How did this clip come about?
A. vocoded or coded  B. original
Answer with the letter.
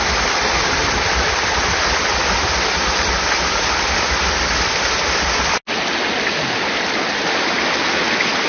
B